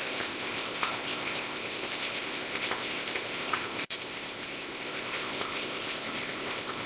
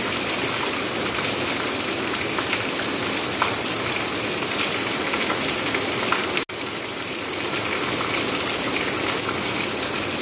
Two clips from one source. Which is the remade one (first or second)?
first